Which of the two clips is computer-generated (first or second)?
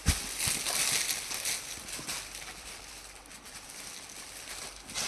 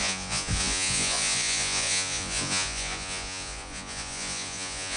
second